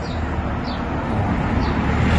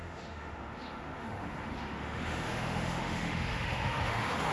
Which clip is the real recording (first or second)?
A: first